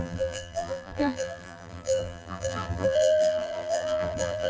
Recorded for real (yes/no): no